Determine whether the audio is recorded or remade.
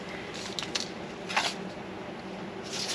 recorded